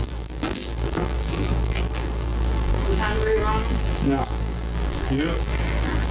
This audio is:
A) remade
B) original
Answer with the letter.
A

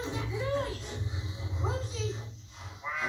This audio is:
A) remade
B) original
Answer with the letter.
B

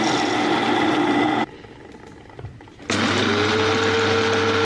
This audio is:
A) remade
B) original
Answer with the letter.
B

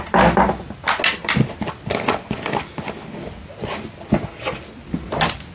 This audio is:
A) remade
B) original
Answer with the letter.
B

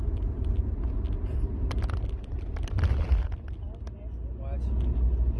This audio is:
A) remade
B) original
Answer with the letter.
B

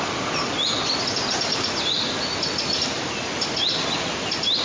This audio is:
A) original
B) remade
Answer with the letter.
A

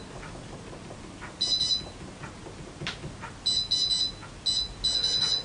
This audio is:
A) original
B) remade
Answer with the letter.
A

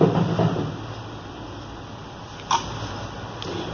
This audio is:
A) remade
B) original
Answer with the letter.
B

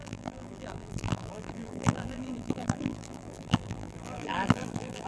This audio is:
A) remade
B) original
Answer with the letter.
A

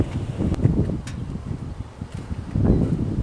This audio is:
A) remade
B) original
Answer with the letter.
B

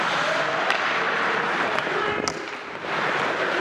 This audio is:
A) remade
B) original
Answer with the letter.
A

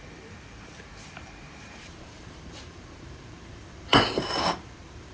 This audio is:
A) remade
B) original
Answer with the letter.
A